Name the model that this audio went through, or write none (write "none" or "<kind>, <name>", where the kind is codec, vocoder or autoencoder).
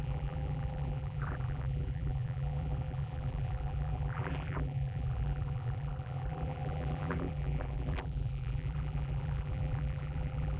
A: vocoder, BigVGAN v2